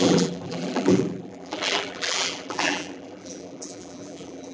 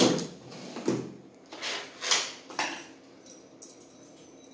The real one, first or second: second